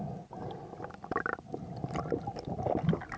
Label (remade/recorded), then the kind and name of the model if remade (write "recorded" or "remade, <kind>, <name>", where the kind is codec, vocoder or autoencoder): recorded